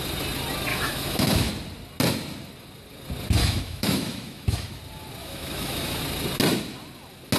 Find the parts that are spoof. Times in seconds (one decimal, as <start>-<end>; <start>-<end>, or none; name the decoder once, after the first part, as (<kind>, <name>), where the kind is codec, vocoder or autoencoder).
0.7-1.5 (autoencoder, DAC-VAE); 3.4-4.8; 5.2-6.0